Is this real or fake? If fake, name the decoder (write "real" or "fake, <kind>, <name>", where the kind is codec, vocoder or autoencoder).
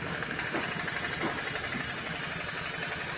real